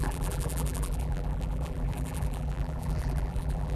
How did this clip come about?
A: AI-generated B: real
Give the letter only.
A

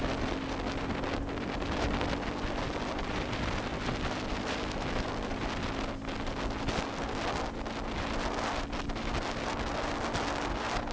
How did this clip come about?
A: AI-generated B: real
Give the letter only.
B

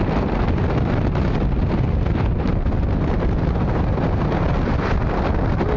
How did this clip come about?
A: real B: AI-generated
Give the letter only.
A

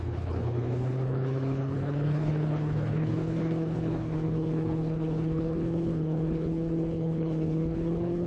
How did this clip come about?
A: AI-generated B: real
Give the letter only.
A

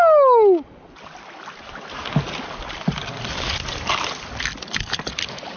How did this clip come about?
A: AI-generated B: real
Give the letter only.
B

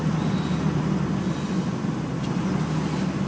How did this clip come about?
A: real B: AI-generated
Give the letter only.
A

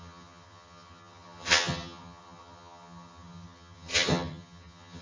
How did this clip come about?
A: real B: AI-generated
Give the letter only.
B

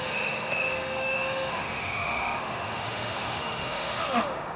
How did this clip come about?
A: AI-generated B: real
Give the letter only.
A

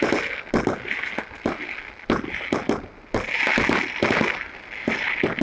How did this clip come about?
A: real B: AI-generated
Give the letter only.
A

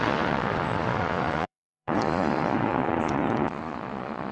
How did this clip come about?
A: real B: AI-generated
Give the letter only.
B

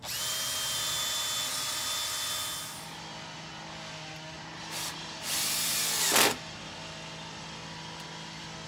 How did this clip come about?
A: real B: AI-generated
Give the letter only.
A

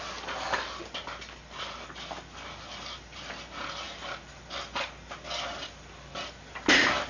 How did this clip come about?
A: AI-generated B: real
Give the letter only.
B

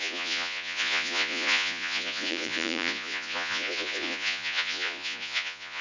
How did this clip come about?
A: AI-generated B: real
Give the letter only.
A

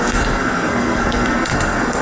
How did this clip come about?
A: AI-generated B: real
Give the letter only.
A